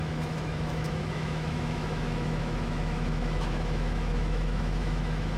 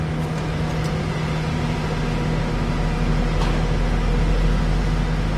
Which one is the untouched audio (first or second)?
second